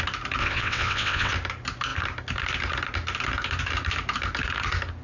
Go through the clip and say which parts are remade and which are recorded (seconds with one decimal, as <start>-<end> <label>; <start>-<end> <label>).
0.0-0.4 recorded; 0.4-1.3 remade; 1.3-5.0 recorded